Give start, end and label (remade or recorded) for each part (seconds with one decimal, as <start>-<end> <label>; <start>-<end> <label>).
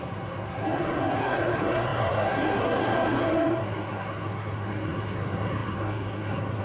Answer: 0.0-6.6 remade